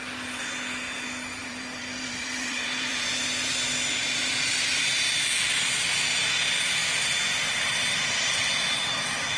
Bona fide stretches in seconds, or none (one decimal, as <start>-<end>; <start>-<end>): 0.0-1.4; 3.0-4.0; 4.5-6.8